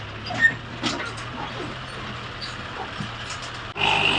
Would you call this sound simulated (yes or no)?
no